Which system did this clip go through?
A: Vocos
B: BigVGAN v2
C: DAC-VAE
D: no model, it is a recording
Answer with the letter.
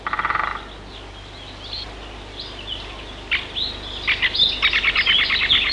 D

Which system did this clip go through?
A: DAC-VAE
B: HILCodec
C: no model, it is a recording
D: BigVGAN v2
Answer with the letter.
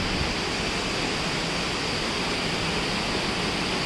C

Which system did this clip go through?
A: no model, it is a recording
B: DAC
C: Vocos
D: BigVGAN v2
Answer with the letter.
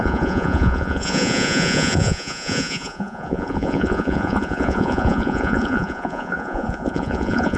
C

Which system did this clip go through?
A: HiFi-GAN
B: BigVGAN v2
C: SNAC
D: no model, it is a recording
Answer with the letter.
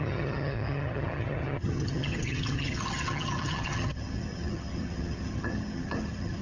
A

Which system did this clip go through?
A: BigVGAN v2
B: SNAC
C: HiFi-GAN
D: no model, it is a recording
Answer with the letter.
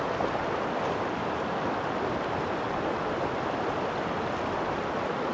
D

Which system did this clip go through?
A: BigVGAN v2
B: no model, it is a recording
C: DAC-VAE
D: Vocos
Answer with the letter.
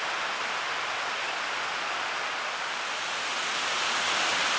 B